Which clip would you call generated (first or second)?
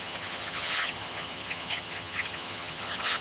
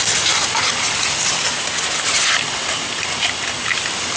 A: first